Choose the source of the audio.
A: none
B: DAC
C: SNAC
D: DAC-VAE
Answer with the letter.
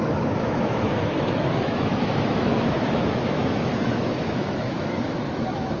D